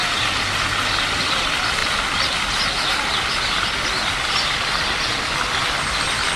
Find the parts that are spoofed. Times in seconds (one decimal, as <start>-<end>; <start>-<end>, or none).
none